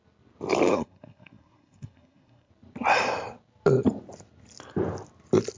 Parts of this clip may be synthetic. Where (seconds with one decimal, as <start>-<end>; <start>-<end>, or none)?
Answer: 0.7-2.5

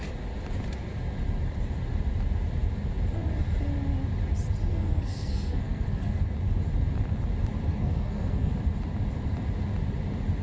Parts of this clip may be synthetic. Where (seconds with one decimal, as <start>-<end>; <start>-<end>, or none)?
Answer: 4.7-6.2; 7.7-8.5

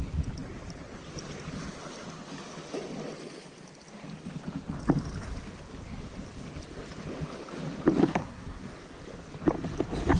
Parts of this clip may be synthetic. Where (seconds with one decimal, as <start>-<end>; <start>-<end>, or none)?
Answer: 8.0-8.6

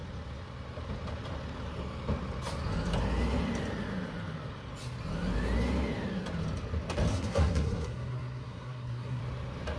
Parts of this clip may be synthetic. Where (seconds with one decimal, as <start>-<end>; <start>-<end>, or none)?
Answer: 7.1-9.2

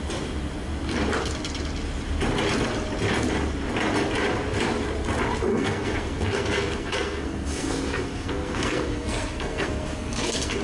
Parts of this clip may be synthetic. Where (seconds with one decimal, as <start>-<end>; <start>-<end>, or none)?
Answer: 5.5-10.6

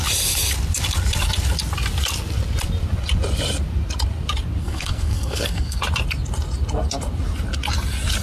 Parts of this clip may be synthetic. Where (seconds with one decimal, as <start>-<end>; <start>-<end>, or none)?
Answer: 4.6-5.8